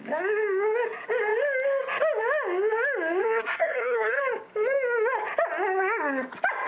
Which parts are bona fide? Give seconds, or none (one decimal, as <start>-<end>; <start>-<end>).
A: 0.0-3.2; 4.2-6.7